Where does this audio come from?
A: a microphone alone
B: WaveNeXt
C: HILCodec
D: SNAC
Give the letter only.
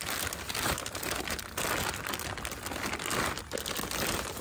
A